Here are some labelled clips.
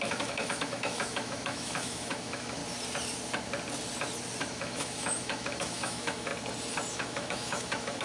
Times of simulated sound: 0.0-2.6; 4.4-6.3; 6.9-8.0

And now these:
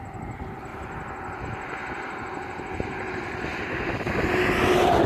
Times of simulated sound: none

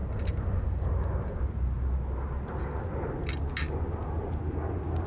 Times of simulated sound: none

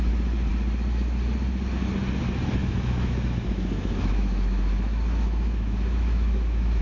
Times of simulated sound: 2.6-6.8

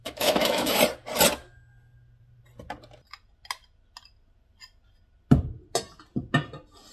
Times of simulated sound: 0.0-0.8

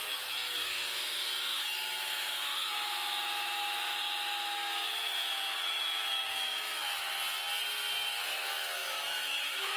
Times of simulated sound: 0.0-7.1; 8.1-9.8